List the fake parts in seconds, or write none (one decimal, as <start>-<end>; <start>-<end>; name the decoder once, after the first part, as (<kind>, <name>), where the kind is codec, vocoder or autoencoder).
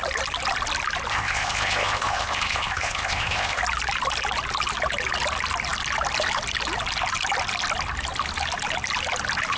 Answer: 1.1-3.6 (codec, ZipCodec)